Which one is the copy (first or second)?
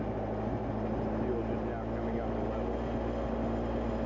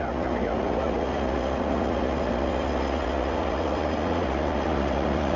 second